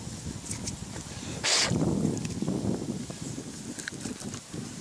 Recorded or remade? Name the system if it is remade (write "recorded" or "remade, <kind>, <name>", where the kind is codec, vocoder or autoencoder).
recorded